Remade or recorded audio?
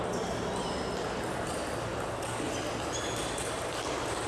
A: recorded